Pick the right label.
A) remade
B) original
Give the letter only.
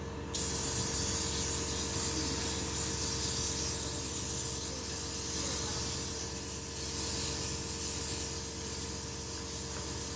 B